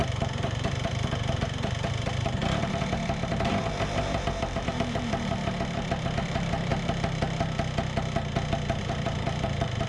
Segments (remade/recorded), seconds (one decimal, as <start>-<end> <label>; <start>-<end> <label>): 0.0-6.7 remade; 6.7-8.8 recorded; 8.8-9.9 remade